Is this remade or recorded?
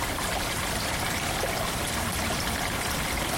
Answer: recorded